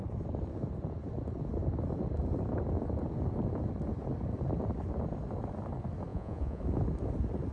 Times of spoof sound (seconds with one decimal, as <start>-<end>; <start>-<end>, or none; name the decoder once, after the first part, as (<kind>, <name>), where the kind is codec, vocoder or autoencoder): 6.1-6.6 (vocoder, Vocos)